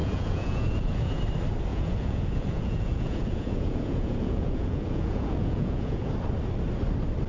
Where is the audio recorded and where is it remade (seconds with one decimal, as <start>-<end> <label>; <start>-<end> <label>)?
0.0-1.2 remade; 1.2-1.7 recorded; 1.7-6.1 remade; 6.1-7.3 recorded